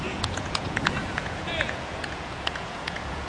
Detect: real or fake fake